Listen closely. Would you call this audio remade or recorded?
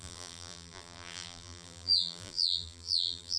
remade